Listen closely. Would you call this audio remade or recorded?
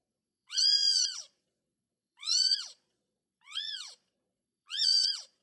remade